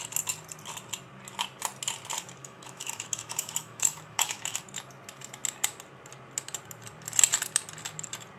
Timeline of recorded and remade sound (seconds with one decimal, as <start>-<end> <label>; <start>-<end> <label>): 0.0-2.4 recorded; 2.4-4.6 remade; 4.6-8.4 recorded